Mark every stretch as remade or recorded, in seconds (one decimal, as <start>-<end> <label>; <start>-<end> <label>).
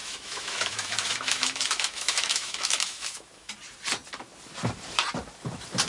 0.0-3.5 remade; 3.5-5.9 recorded